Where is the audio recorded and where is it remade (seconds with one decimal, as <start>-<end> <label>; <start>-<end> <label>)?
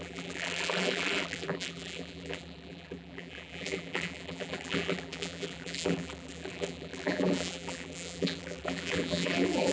0.0-9.7 remade